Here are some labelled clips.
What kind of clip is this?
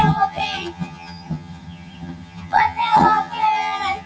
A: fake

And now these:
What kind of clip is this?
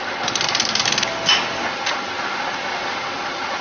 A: real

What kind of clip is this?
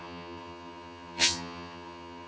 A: fake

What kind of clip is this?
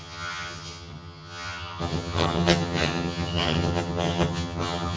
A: fake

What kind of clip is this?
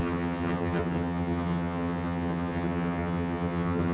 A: fake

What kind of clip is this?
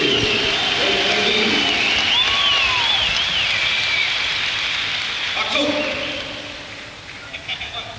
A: real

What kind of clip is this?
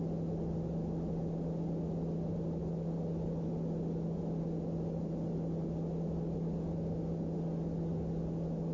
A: real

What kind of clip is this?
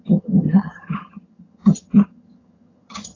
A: fake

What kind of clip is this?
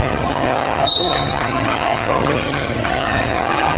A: fake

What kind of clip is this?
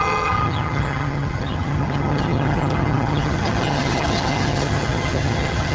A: fake